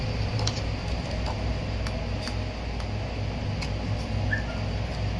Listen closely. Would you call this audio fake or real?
real